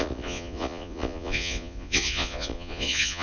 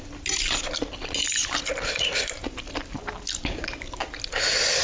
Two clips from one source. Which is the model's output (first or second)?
first